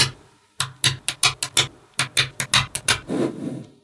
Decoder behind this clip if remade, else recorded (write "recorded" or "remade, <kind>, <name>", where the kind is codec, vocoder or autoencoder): recorded